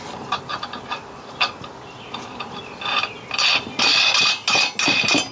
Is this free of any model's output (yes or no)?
yes